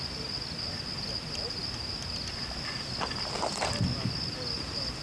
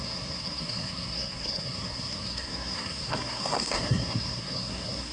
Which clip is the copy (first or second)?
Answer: second